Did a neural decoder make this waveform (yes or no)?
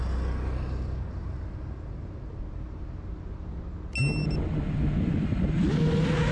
no